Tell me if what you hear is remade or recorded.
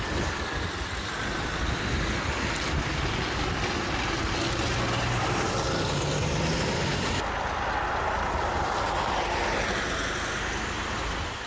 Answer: recorded